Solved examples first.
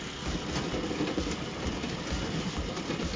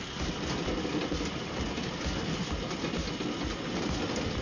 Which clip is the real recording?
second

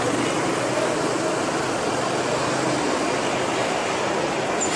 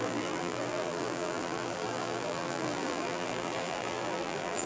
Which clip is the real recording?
first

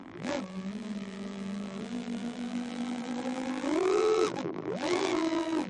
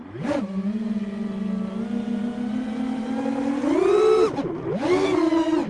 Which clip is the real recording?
second